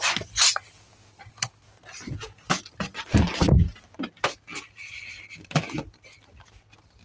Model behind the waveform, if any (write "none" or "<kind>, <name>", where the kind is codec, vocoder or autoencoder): none